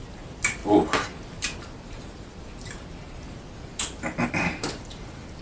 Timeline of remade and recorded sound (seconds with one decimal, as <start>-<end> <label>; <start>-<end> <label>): 0.0-5.4 recorded